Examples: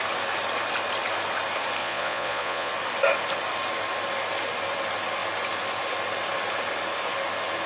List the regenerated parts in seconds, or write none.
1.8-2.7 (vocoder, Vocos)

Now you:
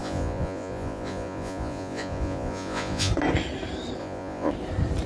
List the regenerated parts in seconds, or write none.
0.0-3.1 (vocoder, Vocos); 4.0-4.5

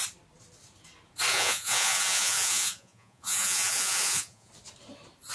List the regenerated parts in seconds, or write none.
1.3-4.5 (vocoder, Vocos)

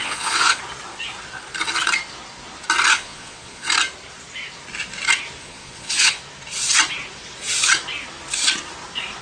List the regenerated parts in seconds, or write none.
0.0-0.6 (vocoder, Vocos); 2.9-3.7; 5.4-6.2